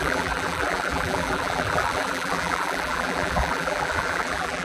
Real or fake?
fake